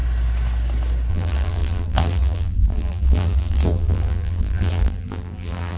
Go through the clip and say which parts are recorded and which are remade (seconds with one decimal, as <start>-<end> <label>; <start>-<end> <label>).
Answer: 0.0-1.1 recorded; 1.1-5.8 remade